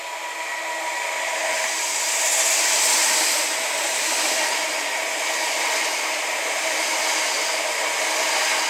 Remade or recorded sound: recorded